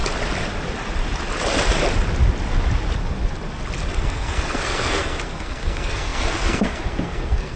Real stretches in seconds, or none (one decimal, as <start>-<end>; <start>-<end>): 0.0-3.9